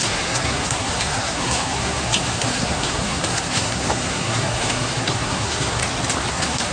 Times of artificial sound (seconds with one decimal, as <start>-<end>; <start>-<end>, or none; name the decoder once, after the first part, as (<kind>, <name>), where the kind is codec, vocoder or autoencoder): 0.0-5.8 (codec, SNAC); 6.3-6.7